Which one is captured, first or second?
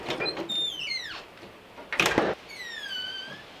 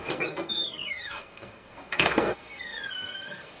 first